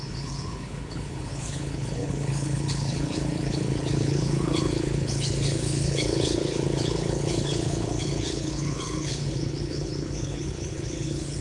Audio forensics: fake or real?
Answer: fake